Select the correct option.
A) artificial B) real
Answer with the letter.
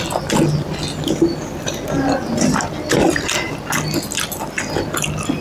B